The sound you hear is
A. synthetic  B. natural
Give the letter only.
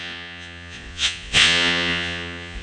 A